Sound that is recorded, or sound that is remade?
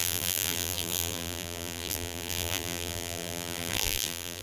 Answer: remade